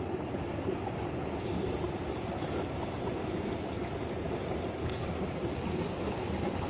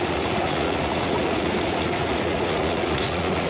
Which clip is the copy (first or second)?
second